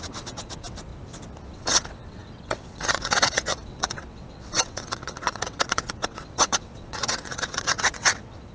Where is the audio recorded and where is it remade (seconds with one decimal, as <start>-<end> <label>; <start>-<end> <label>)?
0.0-0.9 remade; 0.9-1.5 recorded; 1.5-8.5 remade